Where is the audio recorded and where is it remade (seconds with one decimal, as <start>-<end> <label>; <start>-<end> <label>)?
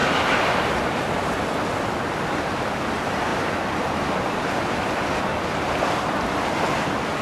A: 0.0-1.2 remade; 1.2-7.2 recorded